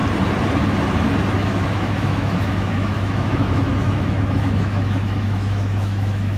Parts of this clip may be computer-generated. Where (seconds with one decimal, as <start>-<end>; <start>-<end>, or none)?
1.3-6.4